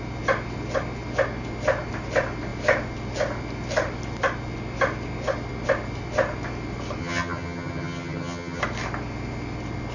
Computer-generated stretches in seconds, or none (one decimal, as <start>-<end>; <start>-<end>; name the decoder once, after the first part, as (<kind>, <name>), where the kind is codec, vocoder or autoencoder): 7.0-8.6 (vocoder, HiFi-GAN)